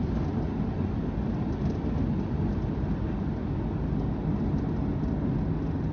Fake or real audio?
real